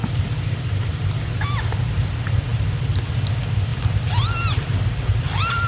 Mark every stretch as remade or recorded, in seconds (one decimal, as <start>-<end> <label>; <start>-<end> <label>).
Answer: 0.0-5.7 recorded